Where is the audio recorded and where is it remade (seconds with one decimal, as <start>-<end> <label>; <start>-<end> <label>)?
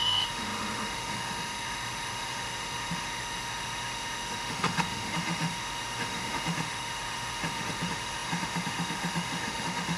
0.0-10.0 remade